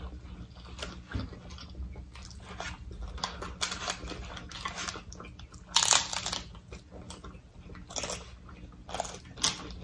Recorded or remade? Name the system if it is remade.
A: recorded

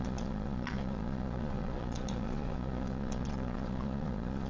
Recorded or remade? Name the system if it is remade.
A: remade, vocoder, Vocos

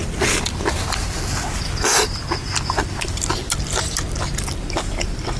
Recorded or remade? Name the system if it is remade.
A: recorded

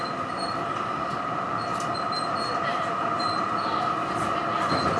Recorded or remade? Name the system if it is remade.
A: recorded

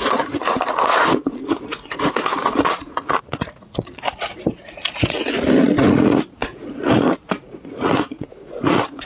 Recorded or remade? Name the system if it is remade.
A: remade, vocoder, Vocos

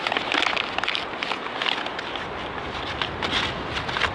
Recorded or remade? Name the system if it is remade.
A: recorded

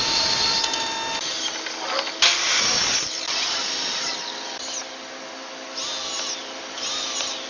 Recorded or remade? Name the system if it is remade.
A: recorded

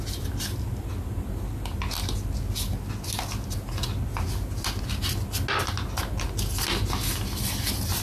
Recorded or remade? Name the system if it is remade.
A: recorded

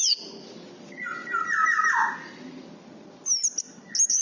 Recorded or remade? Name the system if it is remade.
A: recorded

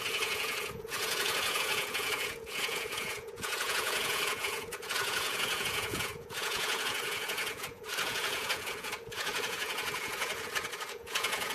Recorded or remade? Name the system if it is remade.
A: remade, vocoder, Vocos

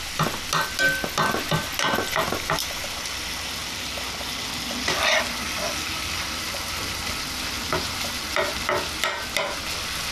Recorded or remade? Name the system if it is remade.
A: recorded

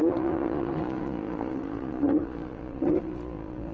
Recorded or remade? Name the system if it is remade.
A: remade, vocoder, Vocos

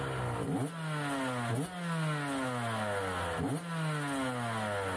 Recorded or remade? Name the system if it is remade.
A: recorded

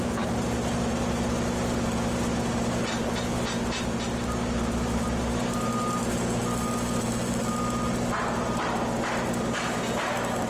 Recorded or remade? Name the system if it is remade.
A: recorded